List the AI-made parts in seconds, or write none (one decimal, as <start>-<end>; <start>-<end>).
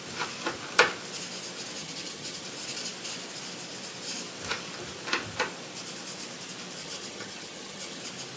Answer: 1.8-2.4; 6.8-8.0